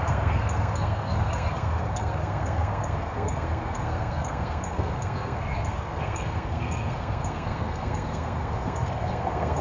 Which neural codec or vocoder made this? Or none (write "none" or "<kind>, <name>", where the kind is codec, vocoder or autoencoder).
codec, SNAC